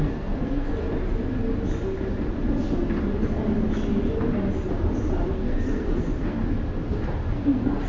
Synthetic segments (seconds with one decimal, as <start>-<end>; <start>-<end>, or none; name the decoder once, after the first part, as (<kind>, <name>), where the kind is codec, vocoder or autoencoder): 0.0-0.7 (codec, SNAC); 5.3-6.4; 7.3-7.9